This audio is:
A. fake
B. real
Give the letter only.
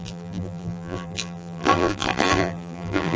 A